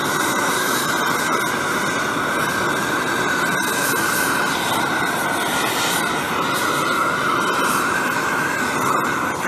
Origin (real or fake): real